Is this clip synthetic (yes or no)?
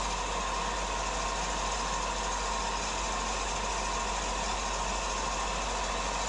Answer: no